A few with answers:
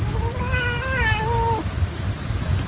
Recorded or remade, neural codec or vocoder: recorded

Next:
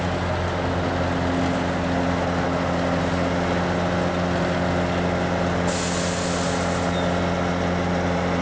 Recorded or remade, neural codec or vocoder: recorded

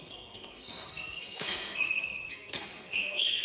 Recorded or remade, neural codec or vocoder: remade, codec, SNAC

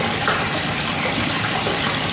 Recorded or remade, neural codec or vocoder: recorded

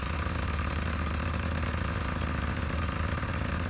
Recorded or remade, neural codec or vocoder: recorded